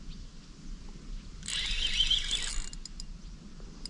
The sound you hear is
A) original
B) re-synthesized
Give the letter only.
A